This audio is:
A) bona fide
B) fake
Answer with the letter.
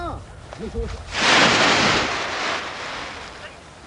A